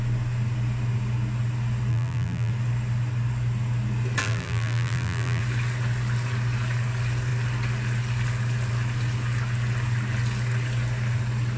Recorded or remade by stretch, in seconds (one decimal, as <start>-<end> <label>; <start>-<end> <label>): 0.0-1.9 recorded; 1.9-2.5 remade; 2.5-4.2 recorded; 4.2-5.4 remade; 5.4-11.6 recorded